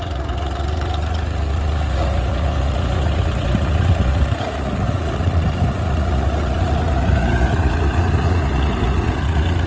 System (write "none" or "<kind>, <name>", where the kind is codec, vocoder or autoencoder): vocoder, Vocos